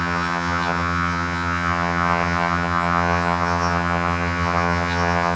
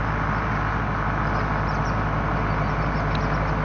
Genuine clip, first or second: second